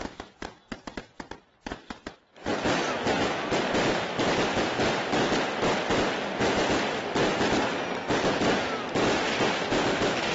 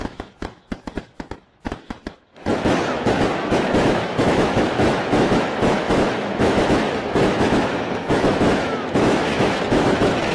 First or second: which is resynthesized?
second